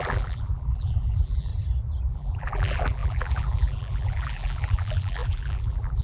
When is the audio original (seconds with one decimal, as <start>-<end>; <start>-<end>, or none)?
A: 1.5-2.1